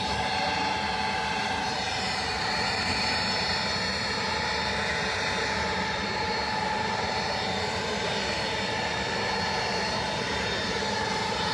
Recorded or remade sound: remade